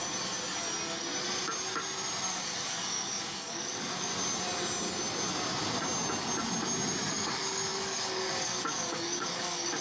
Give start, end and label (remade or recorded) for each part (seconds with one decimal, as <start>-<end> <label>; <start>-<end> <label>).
0.0-2.3 recorded; 2.3-4.1 remade; 4.1-7.1 recorded; 7.1-9.8 remade